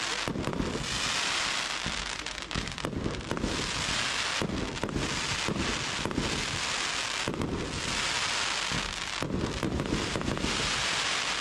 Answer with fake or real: real